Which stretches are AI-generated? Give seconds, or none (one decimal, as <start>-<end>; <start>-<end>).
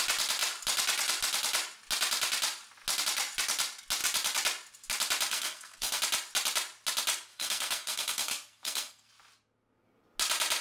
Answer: 5.3-6.0; 7.3-9.1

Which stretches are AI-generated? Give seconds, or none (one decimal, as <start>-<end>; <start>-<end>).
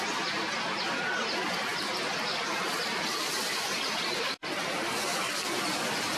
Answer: none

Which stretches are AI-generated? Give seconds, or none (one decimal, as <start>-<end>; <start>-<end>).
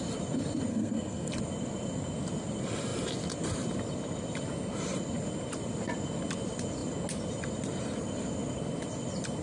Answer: 0.7-1.3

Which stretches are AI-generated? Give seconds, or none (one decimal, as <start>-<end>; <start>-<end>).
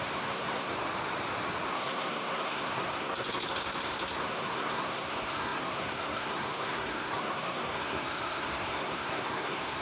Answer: 0.0-0.7; 1.7-9.8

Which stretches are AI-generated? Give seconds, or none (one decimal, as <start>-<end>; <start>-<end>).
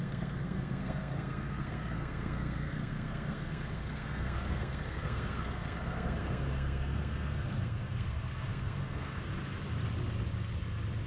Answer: 0.0-9.3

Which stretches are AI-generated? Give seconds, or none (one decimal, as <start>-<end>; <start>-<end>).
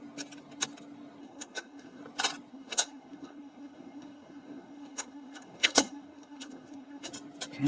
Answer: 1.2-2.0; 2.5-7.1